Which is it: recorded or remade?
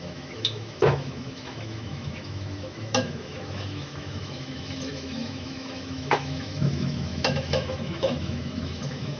remade